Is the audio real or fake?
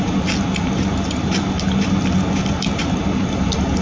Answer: real